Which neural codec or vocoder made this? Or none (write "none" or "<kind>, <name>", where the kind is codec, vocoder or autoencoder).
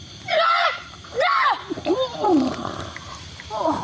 vocoder, BigVGAN v2